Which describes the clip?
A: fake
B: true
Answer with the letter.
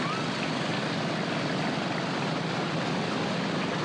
B